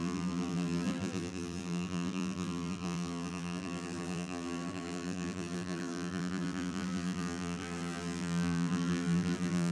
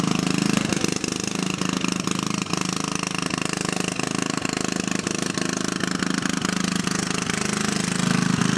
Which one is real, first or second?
second